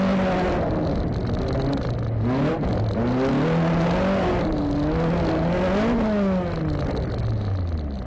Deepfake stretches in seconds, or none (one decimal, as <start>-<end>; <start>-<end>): none